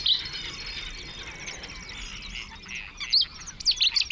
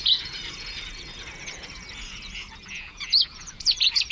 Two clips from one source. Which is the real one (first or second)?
first